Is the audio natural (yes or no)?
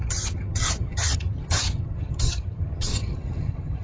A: no